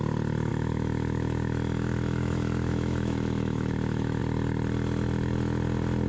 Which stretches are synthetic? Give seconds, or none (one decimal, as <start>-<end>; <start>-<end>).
0.5-4.2